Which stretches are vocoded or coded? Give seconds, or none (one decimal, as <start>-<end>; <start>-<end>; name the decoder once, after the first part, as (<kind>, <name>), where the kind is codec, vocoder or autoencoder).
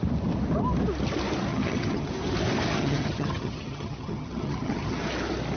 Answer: 1.5-2.1 (vocoder, HiFi-GAN); 2.8-5.0